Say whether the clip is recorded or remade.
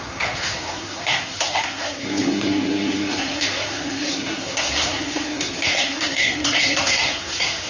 remade